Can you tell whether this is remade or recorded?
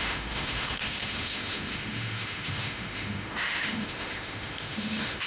remade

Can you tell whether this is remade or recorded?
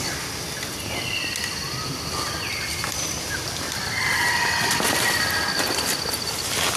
recorded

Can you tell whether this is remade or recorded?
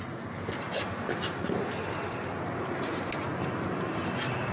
recorded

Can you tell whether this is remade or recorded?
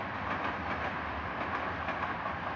recorded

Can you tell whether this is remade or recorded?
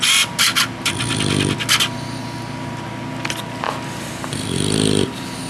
recorded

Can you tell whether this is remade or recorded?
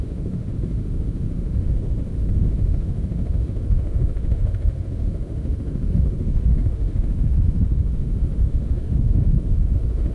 remade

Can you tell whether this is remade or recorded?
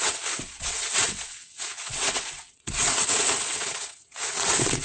remade